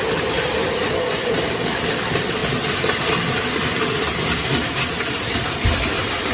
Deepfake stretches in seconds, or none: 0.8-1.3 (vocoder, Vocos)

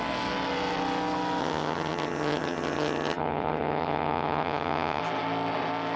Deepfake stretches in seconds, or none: 1.4-5.0 (vocoder, HiFi-GAN)

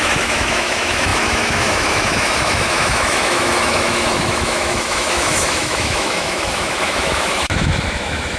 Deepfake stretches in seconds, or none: 0.0-8.4 (autoencoder, DAC-VAE)

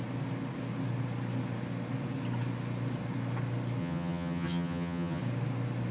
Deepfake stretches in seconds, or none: 3.8-5.2 (vocoder, HiFi-GAN)

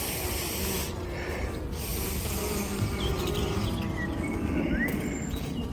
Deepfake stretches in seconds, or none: 1.9-3.2 (vocoder, BigVGAN v2)

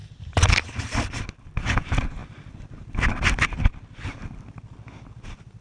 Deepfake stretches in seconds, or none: none